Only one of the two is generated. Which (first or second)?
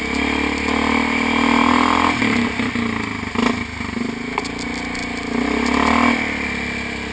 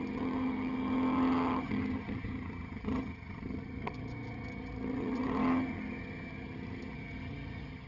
second